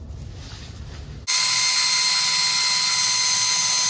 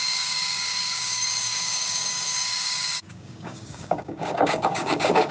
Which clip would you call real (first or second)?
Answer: first